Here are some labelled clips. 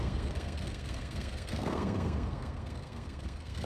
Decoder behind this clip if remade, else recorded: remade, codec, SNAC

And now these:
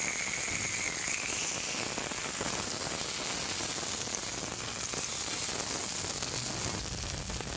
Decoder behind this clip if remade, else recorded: recorded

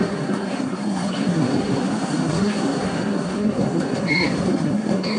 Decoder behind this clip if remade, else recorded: remade, codec, SNAC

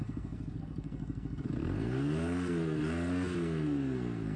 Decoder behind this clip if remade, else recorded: remade, codec, SNAC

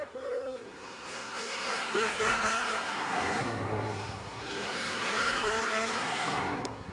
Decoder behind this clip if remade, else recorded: remade, codec, SNAC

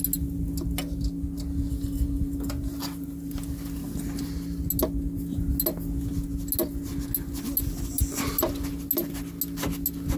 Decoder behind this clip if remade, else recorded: recorded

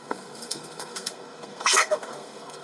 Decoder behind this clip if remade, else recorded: remade, codec, SNAC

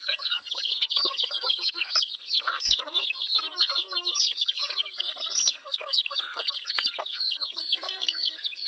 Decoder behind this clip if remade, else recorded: remade, codec, SNAC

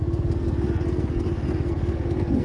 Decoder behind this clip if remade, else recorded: remade, codec, SNAC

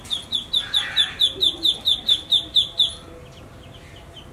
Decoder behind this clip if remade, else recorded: recorded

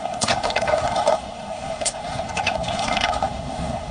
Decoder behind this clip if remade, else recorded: remade, codec, SNAC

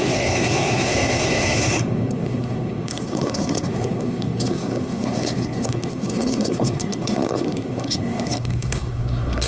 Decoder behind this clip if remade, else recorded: remade, codec, SNAC